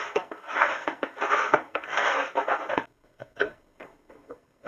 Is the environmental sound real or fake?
fake